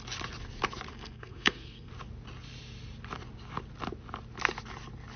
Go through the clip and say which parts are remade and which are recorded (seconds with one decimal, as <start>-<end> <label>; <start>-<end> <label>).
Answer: 0.0-0.9 recorded; 0.9-1.9 remade; 1.9-5.2 recorded